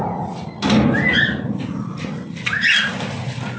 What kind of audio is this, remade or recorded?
recorded